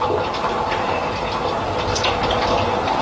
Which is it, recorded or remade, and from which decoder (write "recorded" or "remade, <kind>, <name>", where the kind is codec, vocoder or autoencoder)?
recorded